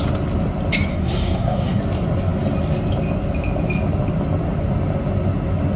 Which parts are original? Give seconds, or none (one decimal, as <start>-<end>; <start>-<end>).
0.0-0.9; 1.8-5.8